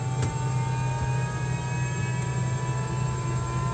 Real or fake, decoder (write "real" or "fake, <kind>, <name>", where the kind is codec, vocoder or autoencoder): real